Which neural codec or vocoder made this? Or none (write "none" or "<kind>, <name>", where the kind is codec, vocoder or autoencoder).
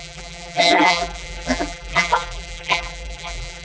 vocoder, BigVGAN v2